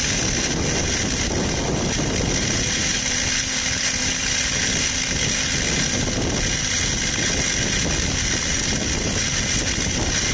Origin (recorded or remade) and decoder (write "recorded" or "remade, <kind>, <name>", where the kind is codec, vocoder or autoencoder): recorded